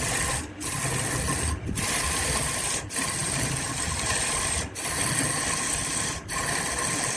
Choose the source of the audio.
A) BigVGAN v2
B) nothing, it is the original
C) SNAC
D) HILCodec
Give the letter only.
B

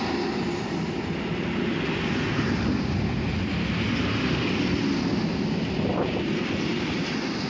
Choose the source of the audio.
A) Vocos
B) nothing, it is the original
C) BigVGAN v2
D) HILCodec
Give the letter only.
B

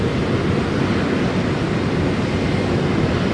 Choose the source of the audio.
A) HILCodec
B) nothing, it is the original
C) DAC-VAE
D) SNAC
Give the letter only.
B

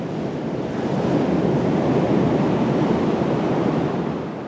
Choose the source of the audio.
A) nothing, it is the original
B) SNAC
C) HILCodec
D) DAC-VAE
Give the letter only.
A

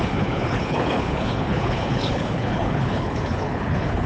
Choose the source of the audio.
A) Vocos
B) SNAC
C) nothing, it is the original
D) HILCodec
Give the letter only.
D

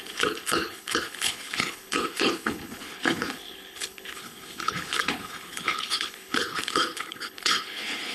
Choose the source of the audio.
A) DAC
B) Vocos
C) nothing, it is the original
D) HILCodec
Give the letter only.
D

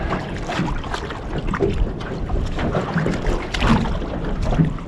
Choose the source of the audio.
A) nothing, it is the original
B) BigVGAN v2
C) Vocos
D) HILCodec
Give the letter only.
A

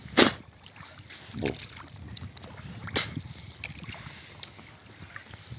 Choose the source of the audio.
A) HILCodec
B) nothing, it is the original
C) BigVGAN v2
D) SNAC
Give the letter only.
B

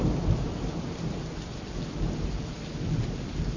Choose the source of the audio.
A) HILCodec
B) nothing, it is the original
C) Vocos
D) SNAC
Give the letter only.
B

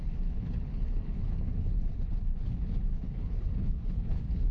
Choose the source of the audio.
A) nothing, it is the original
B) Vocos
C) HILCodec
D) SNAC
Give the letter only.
C